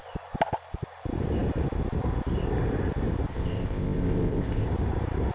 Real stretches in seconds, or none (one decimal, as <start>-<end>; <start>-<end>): 0.0-3.3; 4.7-5.3